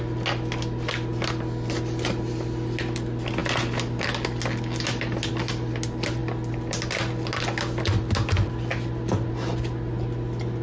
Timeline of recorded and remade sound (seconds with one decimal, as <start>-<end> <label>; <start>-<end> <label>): 0.0-10.6 recorded